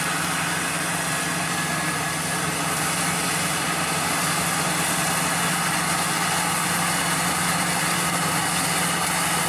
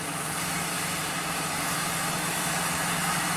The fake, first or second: second